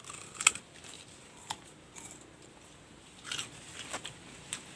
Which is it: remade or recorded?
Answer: recorded